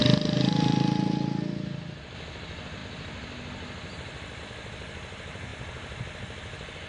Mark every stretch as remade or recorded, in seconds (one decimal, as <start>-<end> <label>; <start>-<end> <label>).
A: 0.0-6.9 recorded